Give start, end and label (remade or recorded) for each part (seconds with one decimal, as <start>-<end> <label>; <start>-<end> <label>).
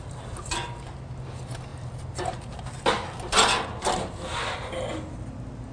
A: 0.0-5.7 recorded